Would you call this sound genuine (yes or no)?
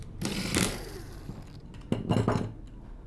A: yes